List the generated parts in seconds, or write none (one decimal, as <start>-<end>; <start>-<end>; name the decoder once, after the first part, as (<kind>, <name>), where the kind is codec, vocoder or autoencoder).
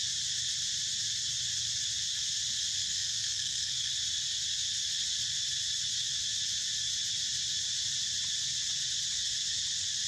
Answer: 2.8-3.9 (codec, SNAC)